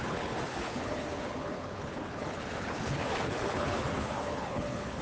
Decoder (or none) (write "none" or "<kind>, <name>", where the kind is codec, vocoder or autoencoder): codec, HILCodec